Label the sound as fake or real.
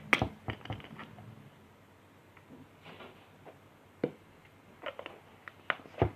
real